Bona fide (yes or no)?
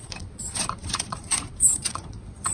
no